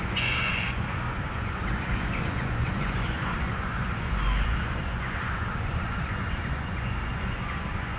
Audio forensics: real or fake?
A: fake